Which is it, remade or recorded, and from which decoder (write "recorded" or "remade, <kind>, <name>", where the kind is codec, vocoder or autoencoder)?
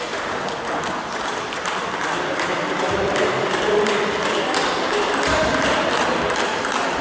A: recorded